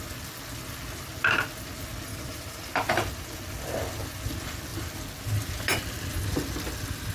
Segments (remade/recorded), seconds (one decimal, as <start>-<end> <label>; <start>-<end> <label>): 0.0-2.1 recorded; 2.1-2.7 remade; 2.7-7.1 recorded